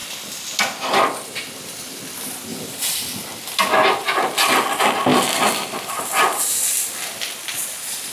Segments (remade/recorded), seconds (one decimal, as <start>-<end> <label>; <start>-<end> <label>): 0.0-2.0 remade; 2.0-2.5 recorded; 2.5-3.1 remade; 3.1-5.1 recorded; 5.1-6.0 remade; 6.0-8.1 recorded